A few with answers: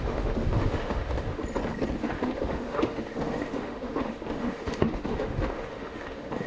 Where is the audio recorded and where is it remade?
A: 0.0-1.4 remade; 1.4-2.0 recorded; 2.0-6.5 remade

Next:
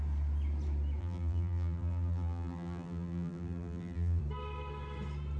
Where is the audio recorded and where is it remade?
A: 0.0-1.0 recorded; 1.0-4.2 remade; 4.2-5.4 recorded

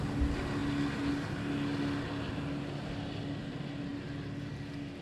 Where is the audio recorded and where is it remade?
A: 0.0-5.0 recorded